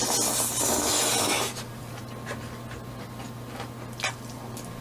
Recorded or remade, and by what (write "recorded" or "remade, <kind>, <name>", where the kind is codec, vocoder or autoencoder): recorded